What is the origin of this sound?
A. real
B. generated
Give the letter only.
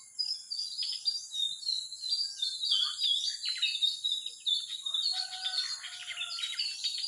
A